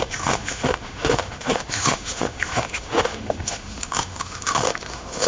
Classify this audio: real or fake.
fake